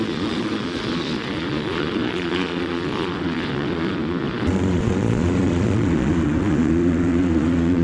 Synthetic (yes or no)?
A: yes